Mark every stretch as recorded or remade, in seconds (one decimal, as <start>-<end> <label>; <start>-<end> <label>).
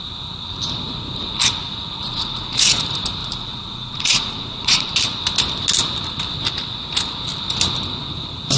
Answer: 0.0-2.1 recorded; 2.1-2.8 remade; 2.8-3.2 recorded; 3.2-4.9 remade; 4.9-8.6 recorded